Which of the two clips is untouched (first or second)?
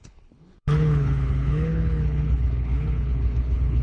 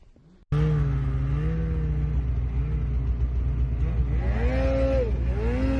second